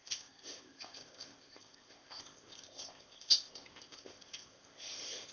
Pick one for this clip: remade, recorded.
remade